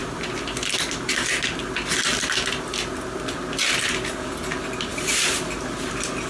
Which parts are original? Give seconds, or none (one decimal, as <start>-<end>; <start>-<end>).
0.0-6.3